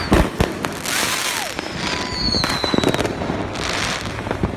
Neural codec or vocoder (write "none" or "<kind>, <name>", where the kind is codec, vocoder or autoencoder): none